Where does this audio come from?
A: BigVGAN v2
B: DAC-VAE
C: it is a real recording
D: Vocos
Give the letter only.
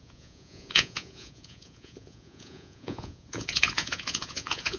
D